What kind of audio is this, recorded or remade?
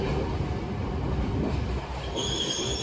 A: recorded